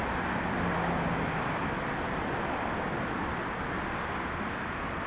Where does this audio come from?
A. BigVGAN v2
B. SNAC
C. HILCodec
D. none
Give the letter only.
D